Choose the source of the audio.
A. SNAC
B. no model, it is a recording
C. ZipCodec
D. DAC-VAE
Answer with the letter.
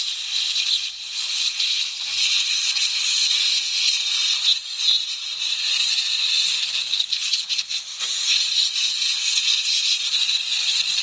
B